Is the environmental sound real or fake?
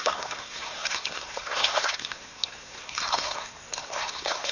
fake